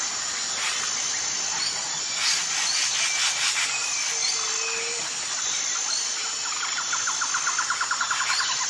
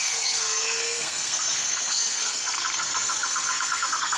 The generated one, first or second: second